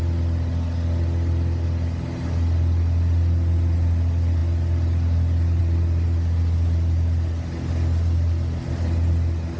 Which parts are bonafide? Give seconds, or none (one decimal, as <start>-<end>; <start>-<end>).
0.0-9.6